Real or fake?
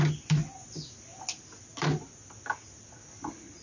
real